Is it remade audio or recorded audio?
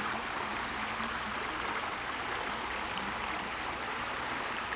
recorded